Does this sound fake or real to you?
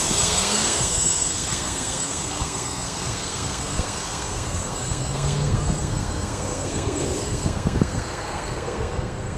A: fake